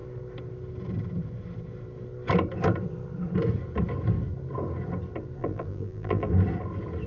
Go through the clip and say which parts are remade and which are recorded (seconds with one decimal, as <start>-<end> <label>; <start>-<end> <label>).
0.0-5.4 recorded; 5.4-6.3 remade; 6.3-7.1 recorded